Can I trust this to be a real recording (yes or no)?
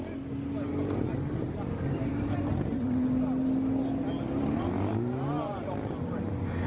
yes